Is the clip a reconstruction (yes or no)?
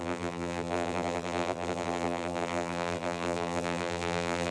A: yes